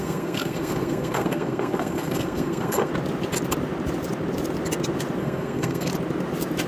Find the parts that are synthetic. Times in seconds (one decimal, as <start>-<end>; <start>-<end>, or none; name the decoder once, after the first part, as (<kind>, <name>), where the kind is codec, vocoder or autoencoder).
0.0-2.9 (codec, SNAC); 5.2-5.9